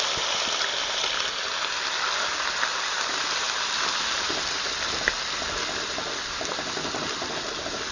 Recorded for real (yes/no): yes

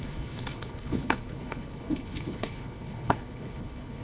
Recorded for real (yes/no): no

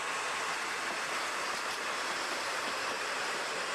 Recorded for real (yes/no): yes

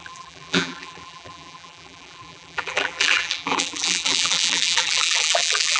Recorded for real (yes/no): no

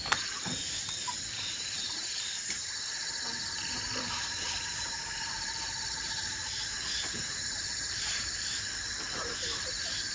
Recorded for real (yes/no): no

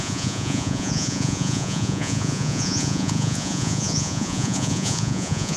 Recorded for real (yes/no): no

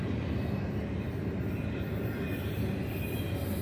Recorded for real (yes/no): yes